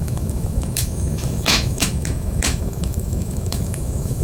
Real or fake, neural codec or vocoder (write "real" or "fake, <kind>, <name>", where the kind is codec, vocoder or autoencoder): fake, autoencoder, DAC-VAE